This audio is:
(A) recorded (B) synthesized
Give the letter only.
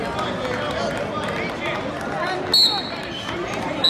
A